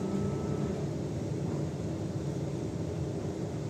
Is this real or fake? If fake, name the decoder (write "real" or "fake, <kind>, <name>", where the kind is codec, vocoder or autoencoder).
fake, vocoder, BigVGAN v2